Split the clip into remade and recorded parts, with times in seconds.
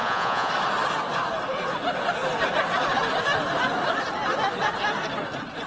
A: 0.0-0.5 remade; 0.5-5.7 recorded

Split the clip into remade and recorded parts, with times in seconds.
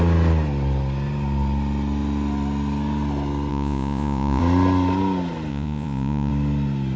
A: 0.0-3.5 recorded; 3.5-4.4 remade; 4.4-5.5 recorded; 5.5-6.3 remade; 6.3-7.0 recorded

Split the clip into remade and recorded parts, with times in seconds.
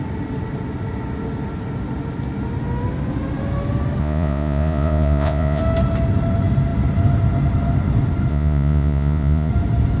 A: 0.0-4.0 recorded; 4.0-5.6 remade; 5.6-8.3 recorded; 8.3-9.5 remade; 9.5-10.0 recorded